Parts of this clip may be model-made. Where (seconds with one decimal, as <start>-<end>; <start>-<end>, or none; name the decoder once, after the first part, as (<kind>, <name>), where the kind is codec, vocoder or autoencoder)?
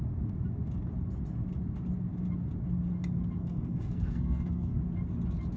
3.4-4.8 (codec, SNAC)